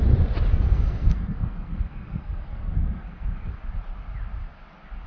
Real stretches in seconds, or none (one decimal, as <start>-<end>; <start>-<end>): 0.0-0.5; 3.6-5.1

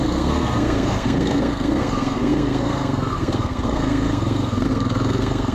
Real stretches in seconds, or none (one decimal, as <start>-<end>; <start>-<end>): none

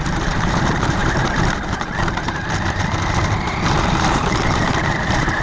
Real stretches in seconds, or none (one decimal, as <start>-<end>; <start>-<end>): none

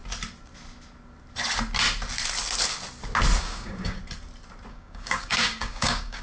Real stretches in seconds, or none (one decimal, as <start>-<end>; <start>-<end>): 0.0-3.4; 4.0-4.7

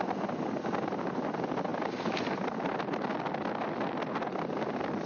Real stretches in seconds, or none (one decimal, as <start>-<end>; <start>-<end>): 0.0-5.1

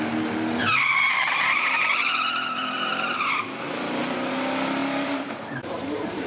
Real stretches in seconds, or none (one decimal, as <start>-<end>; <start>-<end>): 0.0-0.6; 4.3-4.8